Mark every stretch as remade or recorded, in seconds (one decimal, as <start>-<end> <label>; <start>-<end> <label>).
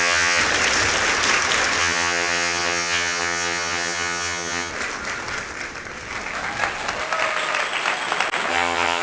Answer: 0.0-0.4 remade; 0.4-1.8 recorded; 1.8-4.7 remade; 4.7-8.5 recorded; 8.5-9.0 remade